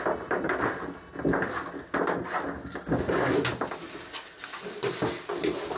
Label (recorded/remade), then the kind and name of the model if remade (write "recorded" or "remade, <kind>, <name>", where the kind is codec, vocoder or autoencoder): recorded